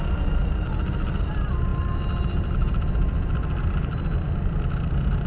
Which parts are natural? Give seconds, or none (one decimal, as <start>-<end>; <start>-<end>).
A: 0.0-5.3